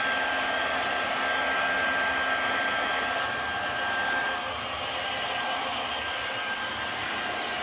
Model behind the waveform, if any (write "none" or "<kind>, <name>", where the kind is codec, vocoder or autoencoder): none